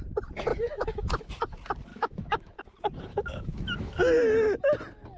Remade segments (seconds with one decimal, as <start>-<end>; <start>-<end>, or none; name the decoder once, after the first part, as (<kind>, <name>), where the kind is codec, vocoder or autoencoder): 0.5-1.3 (autoencoder, DAC-VAE); 1.9-2.6; 3.1-4.0